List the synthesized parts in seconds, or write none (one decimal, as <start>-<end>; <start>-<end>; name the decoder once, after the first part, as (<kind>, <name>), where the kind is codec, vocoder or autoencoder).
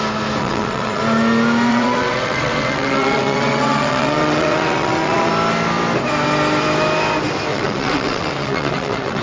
0.4-1.0 (vocoder, WaveNeXt); 1.7-5.3; 7.5-9.2